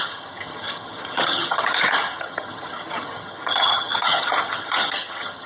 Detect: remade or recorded remade